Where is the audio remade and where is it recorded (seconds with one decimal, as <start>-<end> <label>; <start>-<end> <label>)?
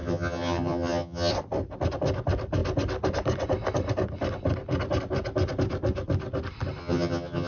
0.0-1.3 remade; 1.3-6.8 recorded; 6.8-7.5 remade